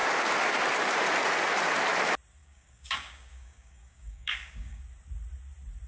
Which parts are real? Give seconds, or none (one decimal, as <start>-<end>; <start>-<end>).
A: 0.0-2.4; 4.8-5.9